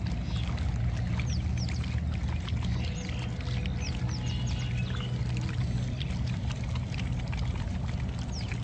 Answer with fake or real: real